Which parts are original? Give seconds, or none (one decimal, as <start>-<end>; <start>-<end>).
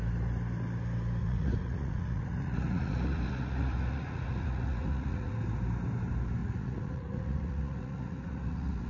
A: 0.0-1.2; 5.3-6.4